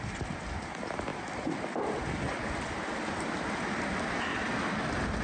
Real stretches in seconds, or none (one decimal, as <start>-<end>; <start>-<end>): 0.0-5.2